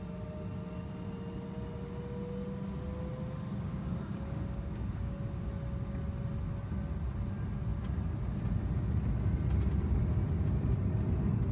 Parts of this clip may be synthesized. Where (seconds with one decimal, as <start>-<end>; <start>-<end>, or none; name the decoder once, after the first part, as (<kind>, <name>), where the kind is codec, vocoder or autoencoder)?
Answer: 3.5-5.4 (codec, DAC)